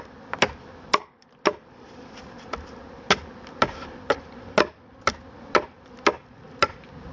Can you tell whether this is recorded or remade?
recorded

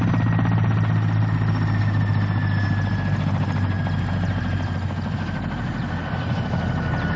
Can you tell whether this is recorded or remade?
recorded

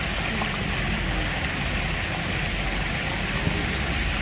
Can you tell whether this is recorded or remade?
recorded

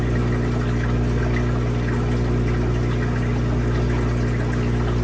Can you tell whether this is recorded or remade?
recorded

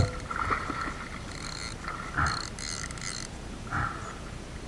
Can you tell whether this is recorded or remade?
recorded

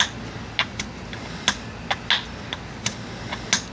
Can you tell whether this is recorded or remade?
recorded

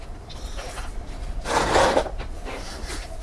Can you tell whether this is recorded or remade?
recorded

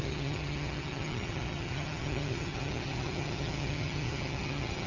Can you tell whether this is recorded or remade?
remade